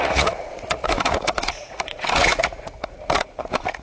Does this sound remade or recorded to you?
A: remade